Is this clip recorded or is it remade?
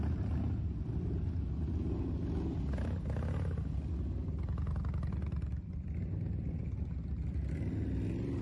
recorded